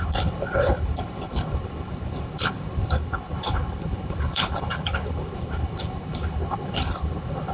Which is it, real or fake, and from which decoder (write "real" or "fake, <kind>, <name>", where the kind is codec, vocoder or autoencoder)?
fake, codec, HILCodec